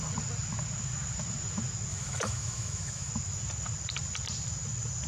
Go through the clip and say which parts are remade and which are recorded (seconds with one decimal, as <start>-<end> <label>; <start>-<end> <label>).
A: 0.0-1.9 recorded; 1.9-3.1 remade; 3.1-5.1 recorded